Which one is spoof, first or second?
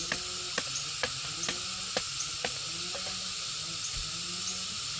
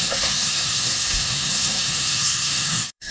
second